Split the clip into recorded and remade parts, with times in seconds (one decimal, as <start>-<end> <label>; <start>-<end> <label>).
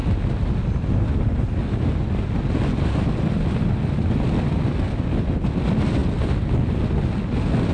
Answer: 0.0-7.7 recorded